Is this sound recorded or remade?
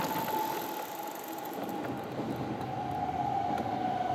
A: recorded